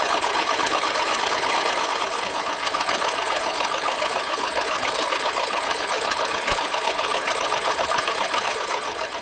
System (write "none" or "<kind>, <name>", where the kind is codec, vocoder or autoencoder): codec, HILCodec